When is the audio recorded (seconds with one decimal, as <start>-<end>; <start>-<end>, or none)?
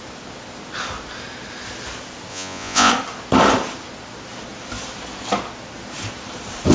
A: 0.0-2.3; 2.9-6.7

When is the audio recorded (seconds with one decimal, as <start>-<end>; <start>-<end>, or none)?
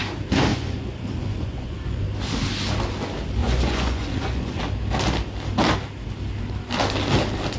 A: 0.0-0.5; 2.0-3.4; 4.6-7.6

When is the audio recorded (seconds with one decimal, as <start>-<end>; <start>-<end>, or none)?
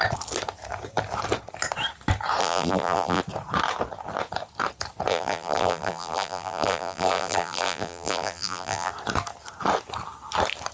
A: 0.0-2.4; 3.2-5.1; 8.9-10.7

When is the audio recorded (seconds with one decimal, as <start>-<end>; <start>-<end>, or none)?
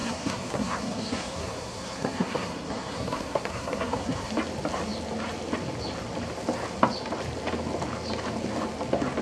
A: 4.3-9.2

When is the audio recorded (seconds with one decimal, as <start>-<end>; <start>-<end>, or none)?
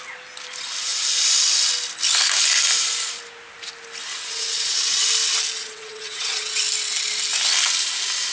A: 0.0-4.1; 5.1-5.6; 6.6-8.3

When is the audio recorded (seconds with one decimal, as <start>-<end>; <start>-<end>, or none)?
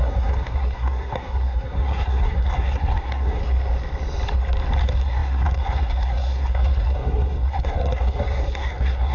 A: 3.4-4.8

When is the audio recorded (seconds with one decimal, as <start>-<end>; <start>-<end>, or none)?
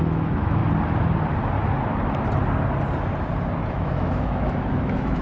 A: 0.6-3.7